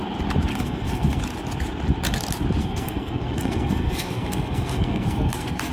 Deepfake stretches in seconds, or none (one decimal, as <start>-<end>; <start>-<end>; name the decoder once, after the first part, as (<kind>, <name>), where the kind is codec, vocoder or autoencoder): 0.5-1.2 (codec, SNAC); 2.6-5.7